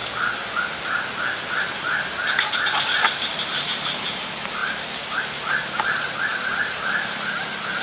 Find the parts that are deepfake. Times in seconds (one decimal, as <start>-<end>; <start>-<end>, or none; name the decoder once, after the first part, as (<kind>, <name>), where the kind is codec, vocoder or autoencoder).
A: none